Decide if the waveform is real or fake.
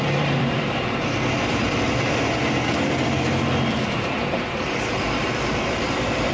fake